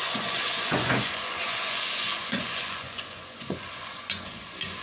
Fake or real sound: fake